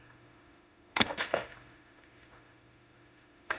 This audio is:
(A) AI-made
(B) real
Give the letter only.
A